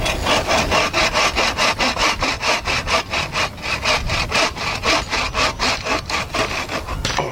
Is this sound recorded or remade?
recorded